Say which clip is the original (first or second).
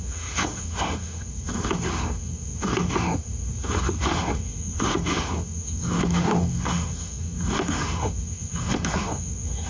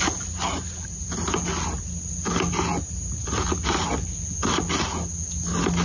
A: second